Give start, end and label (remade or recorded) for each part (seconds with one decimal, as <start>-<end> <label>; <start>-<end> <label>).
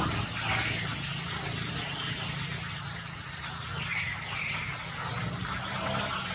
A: 0.0-6.3 recorded